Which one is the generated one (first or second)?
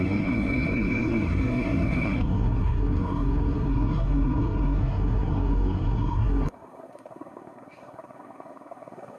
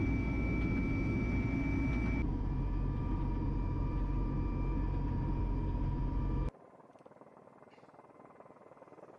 first